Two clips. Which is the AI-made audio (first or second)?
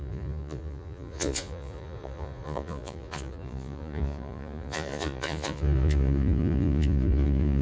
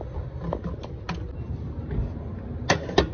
first